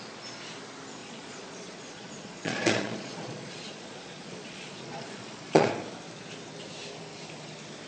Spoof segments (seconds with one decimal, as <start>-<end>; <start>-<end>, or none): 1.0-5.7